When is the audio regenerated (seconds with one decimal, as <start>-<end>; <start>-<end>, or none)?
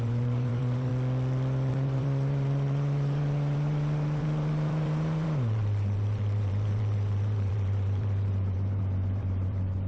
0.0-0.9; 1.7-9.9